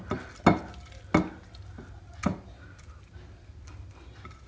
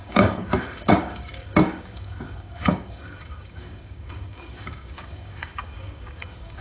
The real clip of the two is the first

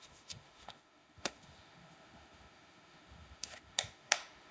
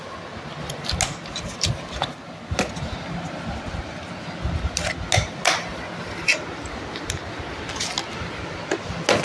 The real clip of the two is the second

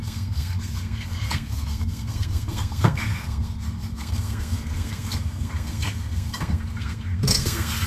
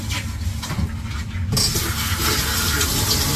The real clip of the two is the second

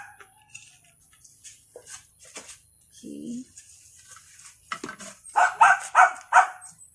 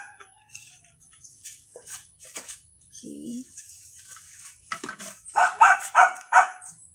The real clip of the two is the first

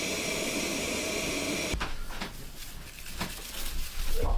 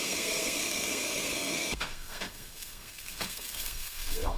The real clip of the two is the first